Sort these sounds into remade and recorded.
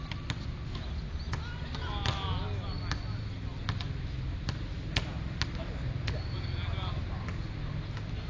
recorded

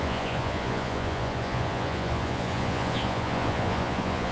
remade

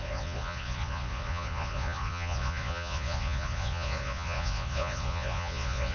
remade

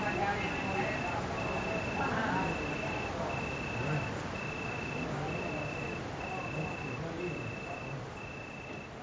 recorded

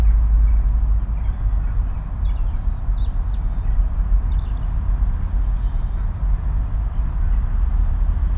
recorded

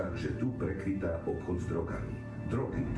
recorded